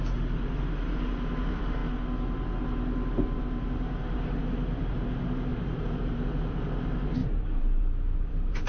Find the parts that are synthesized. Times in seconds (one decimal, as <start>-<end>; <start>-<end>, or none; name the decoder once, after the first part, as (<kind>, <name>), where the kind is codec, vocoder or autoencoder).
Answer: 0.0-1.8 (vocoder, BigVGAN v2); 3.1-8.7